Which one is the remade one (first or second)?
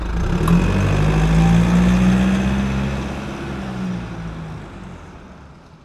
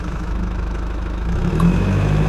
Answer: second